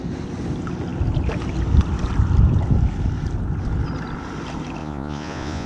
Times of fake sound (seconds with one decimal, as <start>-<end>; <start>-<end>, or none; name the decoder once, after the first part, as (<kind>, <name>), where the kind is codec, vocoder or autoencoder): 4.8-5.7 (vocoder, Vocos)